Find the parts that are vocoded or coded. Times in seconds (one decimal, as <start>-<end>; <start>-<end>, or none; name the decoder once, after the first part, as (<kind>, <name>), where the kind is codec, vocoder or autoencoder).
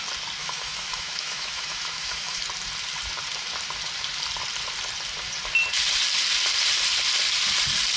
0.4-2.4 (autoencoder, DAC-VAE)